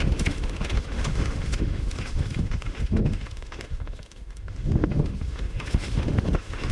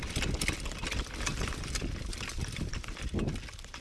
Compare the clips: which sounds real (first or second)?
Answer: second